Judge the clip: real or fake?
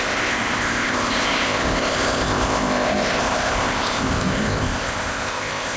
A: fake